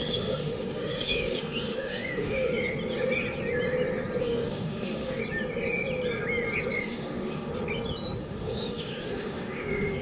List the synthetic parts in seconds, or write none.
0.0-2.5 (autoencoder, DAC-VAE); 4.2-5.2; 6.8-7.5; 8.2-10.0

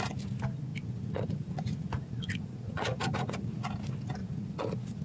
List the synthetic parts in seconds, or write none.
0.7-3.7 (vocoder, Vocos); 4.2-5.0

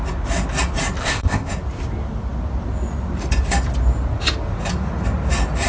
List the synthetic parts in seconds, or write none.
1.0-1.5 (codec, ZipCodec)

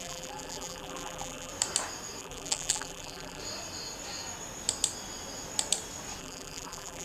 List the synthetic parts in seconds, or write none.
0.0-1.5 (vocoder, BigVGAN v2); 2.2-3.4; 6.2-7.0

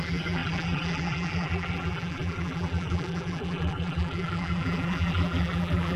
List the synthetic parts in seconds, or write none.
0.0-6.0 (vocoder, BigVGAN v2)

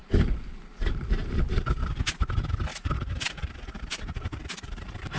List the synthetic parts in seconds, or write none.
0.0-1.9 (vocoder, BigVGAN v2); 2.7-5.2

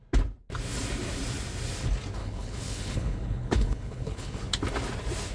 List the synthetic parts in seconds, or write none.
2.2-4.4 (codec, HILCodec)

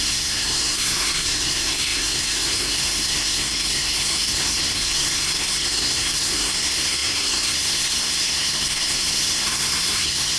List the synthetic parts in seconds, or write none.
0.0-10.4 (codec, SNAC)